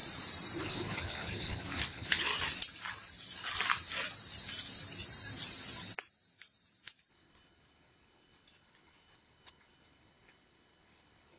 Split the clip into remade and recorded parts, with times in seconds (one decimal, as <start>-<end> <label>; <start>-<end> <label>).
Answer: 0.0-0.6 recorded; 0.6-2.3 remade; 2.3-7.1 recorded; 7.1-11.4 remade